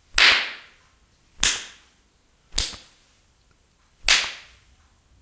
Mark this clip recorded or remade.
recorded